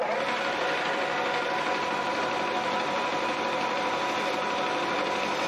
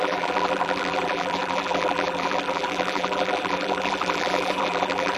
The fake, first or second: second